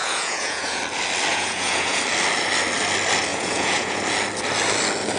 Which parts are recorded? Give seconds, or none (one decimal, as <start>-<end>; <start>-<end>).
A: 0.8-1.3; 2.0-3.3; 4.0-5.2